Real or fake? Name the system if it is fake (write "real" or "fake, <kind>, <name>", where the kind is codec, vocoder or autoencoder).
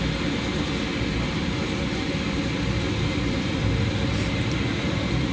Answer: fake, vocoder, BigVGAN v2